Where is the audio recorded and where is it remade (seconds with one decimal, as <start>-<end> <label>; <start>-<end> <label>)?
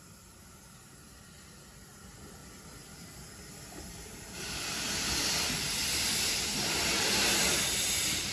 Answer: 0.0-8.3 recorded